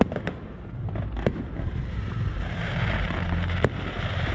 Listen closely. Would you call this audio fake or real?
fake